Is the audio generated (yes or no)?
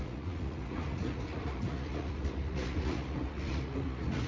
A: yes